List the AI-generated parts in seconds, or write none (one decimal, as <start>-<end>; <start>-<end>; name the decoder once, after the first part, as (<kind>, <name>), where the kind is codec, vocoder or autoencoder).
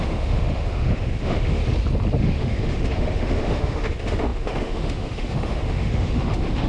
0.0-1.6 (autoencoder, DAC-VAE); 2.2-6.7